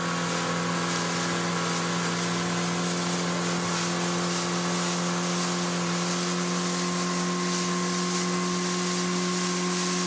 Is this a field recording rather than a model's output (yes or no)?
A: yes